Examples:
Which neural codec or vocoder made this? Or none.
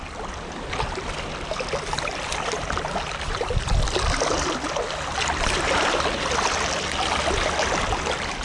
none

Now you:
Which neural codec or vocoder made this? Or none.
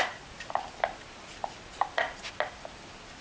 none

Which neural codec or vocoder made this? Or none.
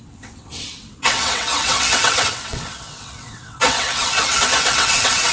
vocoder, WaveNeXt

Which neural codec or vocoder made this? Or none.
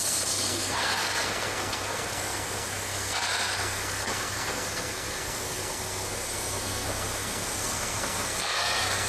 codec, SNAC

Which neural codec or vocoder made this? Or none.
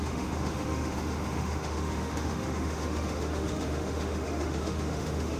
autoencoder, DAC-VAE